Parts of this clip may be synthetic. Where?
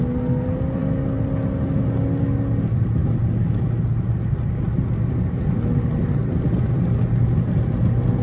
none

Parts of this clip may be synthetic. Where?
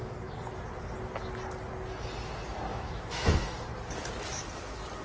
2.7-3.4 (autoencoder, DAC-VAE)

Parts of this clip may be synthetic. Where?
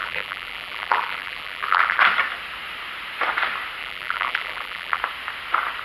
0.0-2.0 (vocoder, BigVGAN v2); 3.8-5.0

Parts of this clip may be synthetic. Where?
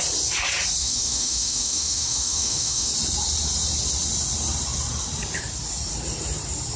0.8-2.9 (autoencoder, DAC-VAE)